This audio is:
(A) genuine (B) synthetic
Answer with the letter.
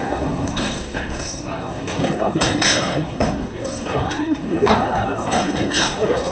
B